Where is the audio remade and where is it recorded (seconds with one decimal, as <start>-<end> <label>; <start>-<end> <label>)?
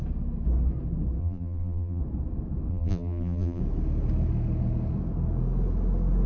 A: 0.0-1.2 recorded; 1.2-2.0 remade; 2.0-2.7 recorded; 2.7-3.6 remade; 3.6-6.3 recorded